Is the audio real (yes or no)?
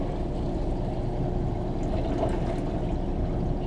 yes